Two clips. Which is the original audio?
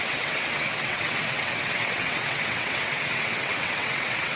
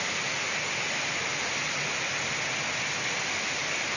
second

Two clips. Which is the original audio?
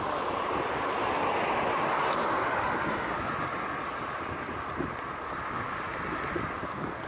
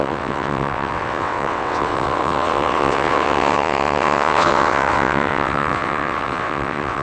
first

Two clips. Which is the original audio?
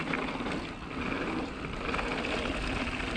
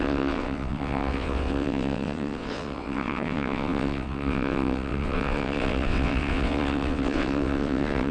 first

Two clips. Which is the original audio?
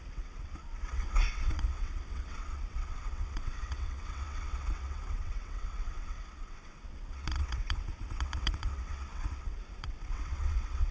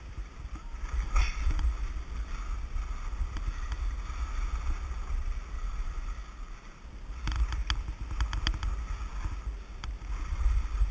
second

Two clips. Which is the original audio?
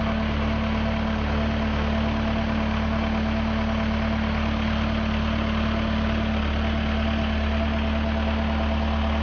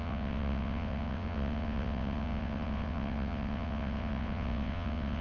first